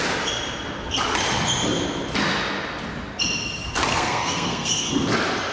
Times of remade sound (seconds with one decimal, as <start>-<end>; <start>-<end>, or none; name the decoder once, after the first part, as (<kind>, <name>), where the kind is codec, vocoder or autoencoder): 3.9-4.9 (codec, SNAC)